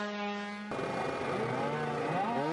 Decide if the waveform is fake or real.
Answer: real